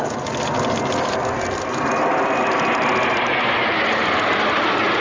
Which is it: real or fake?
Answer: real